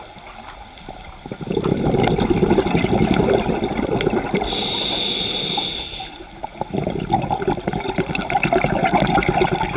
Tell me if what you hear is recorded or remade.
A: recorded